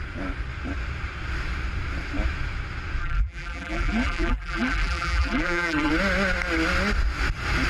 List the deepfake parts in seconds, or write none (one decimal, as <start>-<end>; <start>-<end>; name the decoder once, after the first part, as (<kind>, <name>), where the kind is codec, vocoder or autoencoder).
3.0-5.9 (vocoder, BigVGAN v2)